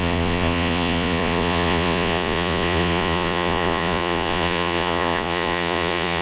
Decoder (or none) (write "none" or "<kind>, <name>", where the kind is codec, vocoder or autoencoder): vocoder, Vocos